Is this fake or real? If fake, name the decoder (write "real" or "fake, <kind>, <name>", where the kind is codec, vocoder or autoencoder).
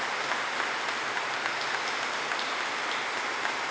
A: real